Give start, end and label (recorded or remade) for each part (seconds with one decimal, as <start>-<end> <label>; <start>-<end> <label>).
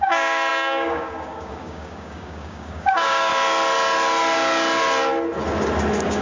0.0-3.3 remade; 3.3-6.2 recorded